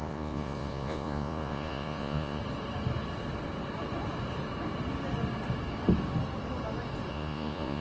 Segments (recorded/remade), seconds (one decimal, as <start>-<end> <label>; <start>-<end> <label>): 0.0-2.4 remade; 2.4-7.1 recorded; 7.1-7.8 remade